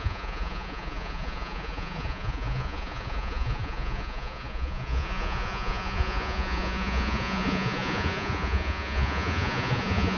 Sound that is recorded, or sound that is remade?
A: remade